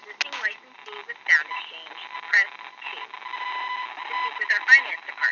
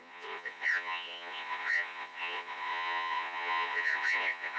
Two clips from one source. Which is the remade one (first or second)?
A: second